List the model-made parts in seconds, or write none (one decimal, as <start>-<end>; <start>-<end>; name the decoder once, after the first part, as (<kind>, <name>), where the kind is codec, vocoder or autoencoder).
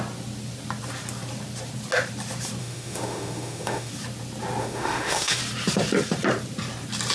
2.6-3.9 (autoencoder, DAC-VAE); 4.6-5.4